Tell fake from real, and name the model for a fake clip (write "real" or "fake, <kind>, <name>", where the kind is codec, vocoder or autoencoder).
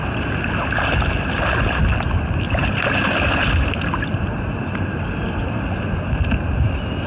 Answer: real